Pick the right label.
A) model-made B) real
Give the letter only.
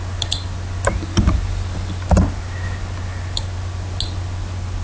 B